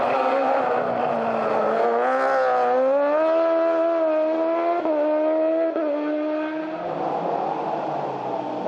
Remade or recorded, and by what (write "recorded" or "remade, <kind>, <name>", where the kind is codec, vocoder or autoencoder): recorded